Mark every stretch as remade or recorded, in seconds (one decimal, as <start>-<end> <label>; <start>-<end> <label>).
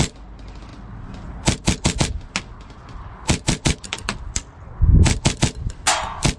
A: 0.0-6.4 recorded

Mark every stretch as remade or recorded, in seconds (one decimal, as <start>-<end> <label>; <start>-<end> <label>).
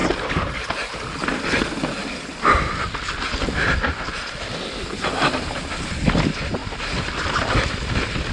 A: 0.0-8.3 recorded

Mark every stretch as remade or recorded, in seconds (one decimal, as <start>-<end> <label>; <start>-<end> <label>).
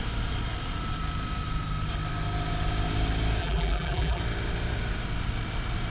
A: 0.0-3.4 recorded; 3.4-4.2 remade; 4.2-5.9 recorded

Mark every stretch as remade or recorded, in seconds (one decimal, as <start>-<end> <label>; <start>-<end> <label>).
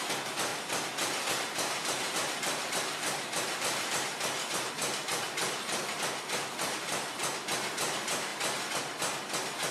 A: 0.0-0.5 recorded; 0.5-4.7 remade; 4.7-5.4 recorded; 5.4-7.3 remade; 7.3-9.7 recorded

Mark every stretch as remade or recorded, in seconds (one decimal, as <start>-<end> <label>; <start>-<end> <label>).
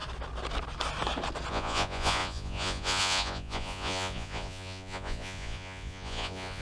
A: 0.0-1.5 recorded; 1.5-6.6 remade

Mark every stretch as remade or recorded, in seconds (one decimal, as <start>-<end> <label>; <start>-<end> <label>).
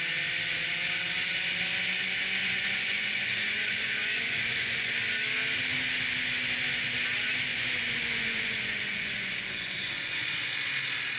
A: 0.0-2.4 recorded; 2.4-4.9 remade; 4.9-7.5 recorded; 7.5-10.5 remade; 10.5-11.2 recorded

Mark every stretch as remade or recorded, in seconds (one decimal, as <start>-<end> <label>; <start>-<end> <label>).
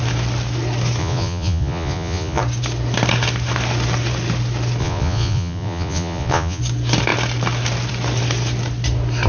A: 0.0-1.0 recorded; 1.0-2.4 remade; 2.4-4.8 recorded; 4.8-6.6 remade; 6.6-9.3 recorded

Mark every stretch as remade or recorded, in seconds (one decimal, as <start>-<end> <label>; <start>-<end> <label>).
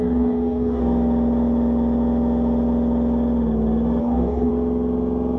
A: 0.0-0.8 remade; 0.8-4.0 recorded; 4.0-4.5 remade; 4.5-5.4 recorded